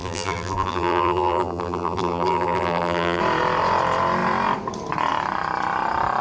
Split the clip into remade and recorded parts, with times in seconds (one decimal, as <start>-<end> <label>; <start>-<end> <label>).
0.0-3.2 remade; 3.2-6.2 recorded